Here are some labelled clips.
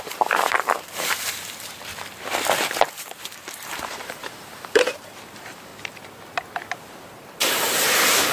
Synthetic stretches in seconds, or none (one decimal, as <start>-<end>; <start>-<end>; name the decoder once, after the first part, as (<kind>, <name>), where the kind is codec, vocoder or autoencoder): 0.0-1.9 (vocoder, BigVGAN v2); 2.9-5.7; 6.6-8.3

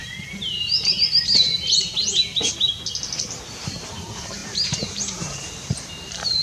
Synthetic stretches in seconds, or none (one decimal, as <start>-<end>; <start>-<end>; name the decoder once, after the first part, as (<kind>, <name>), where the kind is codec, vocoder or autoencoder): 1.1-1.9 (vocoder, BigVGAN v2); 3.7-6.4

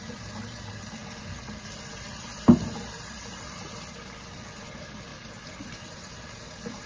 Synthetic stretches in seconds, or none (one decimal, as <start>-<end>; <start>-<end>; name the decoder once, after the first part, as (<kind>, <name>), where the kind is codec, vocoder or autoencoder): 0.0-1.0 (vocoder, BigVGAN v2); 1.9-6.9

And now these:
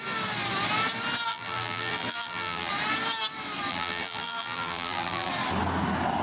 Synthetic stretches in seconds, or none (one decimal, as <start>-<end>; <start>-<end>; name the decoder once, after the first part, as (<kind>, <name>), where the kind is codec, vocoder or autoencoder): 1.3-2.7 (vocoder, BigVGAN v2); 3.7-5.3